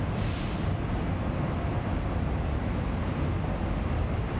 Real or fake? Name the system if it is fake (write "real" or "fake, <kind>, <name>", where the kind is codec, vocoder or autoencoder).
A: real